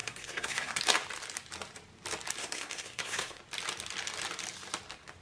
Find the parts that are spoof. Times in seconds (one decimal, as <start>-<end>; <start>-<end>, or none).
0.0-0.8; 2.4-3.4